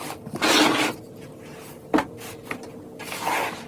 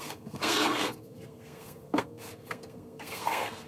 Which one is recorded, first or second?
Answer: first